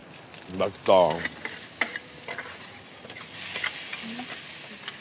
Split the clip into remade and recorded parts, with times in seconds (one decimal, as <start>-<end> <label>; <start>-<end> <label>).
0.0-5.0 recorded